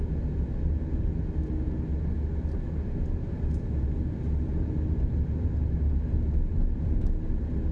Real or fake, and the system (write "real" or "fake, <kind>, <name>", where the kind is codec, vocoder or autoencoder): real